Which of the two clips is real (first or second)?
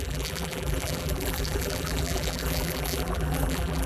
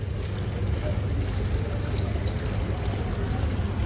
second